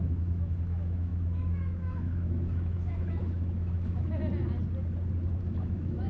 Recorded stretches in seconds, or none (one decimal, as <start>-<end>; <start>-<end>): 4.2-5.4

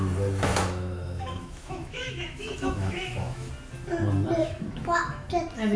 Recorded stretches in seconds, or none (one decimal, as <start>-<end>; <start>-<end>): 0.0-0.5; 3.5-4.4; 5.3-5.8

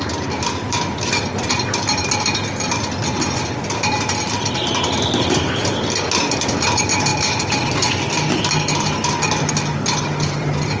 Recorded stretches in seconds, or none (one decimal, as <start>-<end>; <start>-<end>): 0.0-10.8

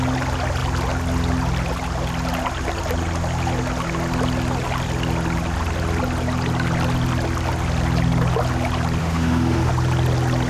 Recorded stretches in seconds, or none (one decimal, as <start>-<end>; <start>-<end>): 0.0-9.0; 9.7-10.5